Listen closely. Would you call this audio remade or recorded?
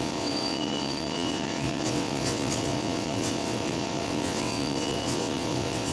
remade